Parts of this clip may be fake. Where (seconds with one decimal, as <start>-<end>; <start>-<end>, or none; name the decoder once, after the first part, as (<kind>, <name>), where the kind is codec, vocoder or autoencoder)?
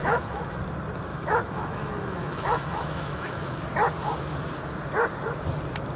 0.0-0.6 (autoencoder, DAC-VAE); 1.1-3.6